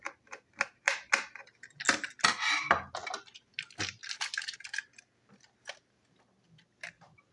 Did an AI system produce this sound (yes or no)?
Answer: no